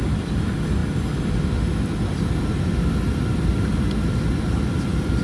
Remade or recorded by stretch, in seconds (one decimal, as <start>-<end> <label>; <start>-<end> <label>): 0.0-0.8 remade; 0.8-3.3 recorded; 3.3-5.2 remade